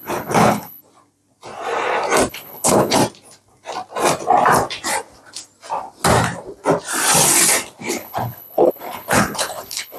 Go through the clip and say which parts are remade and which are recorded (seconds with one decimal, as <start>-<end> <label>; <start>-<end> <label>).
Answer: 0.0-0.8 remade; 0.8-2.3 recorded; 2.3-3.0 remade; 3.0-7.9 recorded; 7.9-10.0 remade